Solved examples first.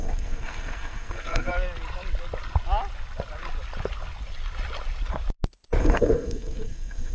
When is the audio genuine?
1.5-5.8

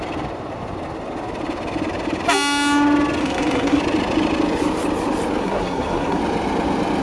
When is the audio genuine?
0.0-3.2; 3.8-5.4; 6.2-7.0

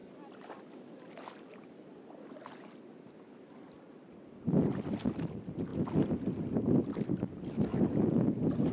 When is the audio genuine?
0.0-7.7

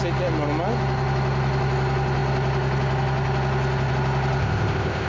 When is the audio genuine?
0.0-4.4